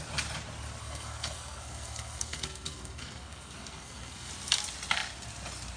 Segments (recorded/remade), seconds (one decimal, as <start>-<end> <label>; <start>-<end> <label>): 0.0-0.8 recorded; 0.8-4.3 remade; 4.3-5.8 recorded